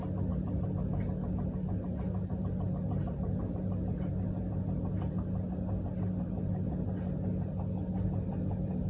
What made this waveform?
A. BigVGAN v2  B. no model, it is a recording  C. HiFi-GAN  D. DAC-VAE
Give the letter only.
B